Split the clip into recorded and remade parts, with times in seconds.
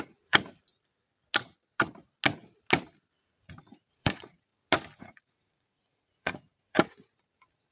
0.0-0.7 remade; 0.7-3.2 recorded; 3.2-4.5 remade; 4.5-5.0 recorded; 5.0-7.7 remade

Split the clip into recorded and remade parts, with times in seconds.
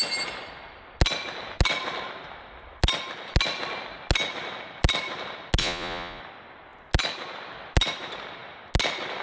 0.0-5.6 recorded; 5.6-6.2 remade; 6.2-9.2 recorded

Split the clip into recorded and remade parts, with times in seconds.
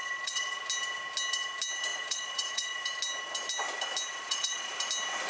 0.0-0.6 remade; 0.6-1.9 recorded; 1.9-2.8 remade; 2.8-4.1 recorded; 4.1-4.7 remade; 4.7-5.3 recorded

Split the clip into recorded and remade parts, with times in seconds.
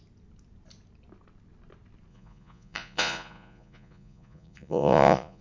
0.0-2.1 recorded; 2.1-5.4 remade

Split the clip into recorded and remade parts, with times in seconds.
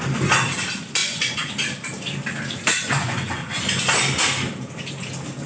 0.0-1.0 recorded; 1.0-1.5 remade; 1.5-2.8 recorded; 2.8-3.6 remade; 3.6-5.5 recorded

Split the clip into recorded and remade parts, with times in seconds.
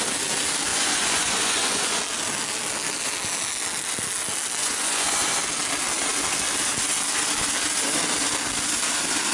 0.0-0.7 recorded; 0.7-2.0 remade; 2.0-4.6 recorded; 4.6-5.4 remade; 5.4-9.3 recorded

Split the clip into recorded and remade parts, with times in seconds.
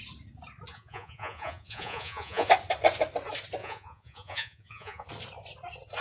0.0-0.7 recorded; 0.7-2.5 remade; 2.5-3.6 recorded; 3.6-5.1 remade; 5.1-6.0 recorded